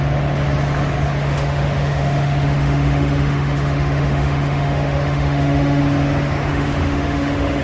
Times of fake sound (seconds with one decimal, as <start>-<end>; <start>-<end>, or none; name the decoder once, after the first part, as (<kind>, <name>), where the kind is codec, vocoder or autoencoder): 1.2-5.8 (autoencoder, DAC-VAE); 6.5-7.6